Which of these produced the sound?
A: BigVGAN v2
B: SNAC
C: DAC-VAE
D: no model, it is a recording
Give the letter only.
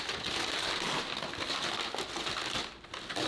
D